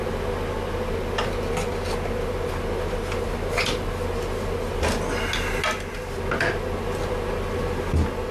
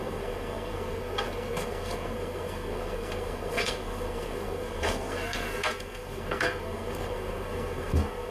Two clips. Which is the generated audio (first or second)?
second